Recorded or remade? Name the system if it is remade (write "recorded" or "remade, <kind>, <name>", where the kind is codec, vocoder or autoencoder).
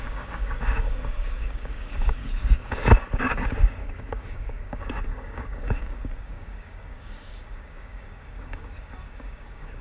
remade, codec, DAC